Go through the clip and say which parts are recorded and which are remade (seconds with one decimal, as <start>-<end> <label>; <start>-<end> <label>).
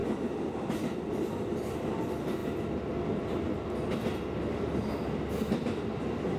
0.0-6.4 recorded